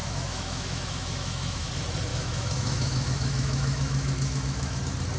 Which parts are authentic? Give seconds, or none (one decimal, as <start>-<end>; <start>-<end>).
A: 1.7-2.1; 4.8-5.2